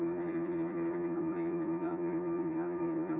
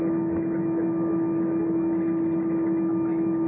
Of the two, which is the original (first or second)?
second